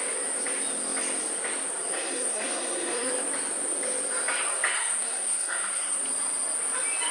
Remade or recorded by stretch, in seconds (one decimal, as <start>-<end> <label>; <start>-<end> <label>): 0.0-1.9 recorded; 1.9-3.1 remade; 3.1-4.7 recorded; 4.7-6.0 remade; 6.0-7.1 recorded